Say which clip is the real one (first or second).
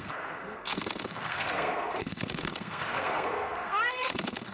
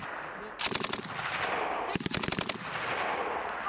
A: second